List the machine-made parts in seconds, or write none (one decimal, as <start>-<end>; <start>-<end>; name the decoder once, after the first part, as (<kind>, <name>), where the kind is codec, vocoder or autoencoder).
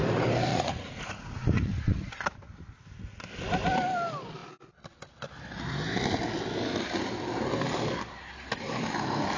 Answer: 0.5-2.1 (vocoder, Vocos)